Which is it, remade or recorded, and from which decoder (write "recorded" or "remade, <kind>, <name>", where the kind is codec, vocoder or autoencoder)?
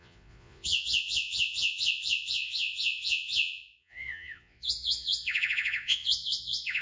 remade, vocoder, Vocos